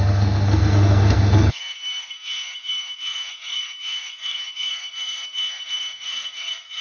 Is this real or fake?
fake